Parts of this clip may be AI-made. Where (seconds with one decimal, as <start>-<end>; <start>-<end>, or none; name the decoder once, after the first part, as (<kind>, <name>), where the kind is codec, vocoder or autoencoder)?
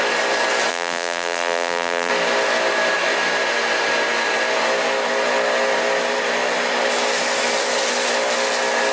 0.7-2.1 (vocoder, BigVGAN v2)